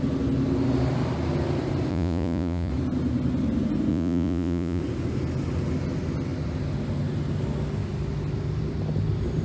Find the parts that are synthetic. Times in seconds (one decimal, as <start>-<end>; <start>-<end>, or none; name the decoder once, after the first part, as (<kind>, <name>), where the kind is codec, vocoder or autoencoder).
1.9-2.7 (vocoder, Vocos); 3.9-4.8